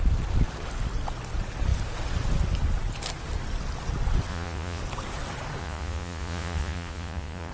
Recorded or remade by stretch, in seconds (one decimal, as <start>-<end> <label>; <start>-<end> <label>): 0.0-4.3 recorded; 4.3-4.8 remade; 4.8-5.6 recorded; 5.6-7.5 remade